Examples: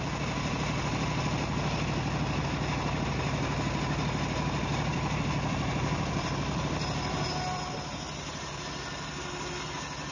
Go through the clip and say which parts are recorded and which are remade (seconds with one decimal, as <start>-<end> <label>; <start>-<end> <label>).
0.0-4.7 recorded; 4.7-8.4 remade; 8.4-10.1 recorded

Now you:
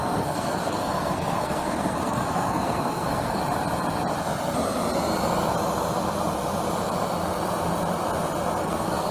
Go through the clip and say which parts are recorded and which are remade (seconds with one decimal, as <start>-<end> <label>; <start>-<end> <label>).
0.0-3.4 remade; 3.4-8.6 recorded; 8.6-9.1 remade

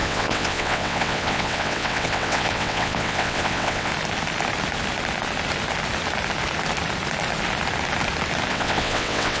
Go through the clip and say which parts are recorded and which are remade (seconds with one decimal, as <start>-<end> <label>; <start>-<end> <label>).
0.0-3.9 remade; 3.9-8.5 recorded; 8.5-9.4 remade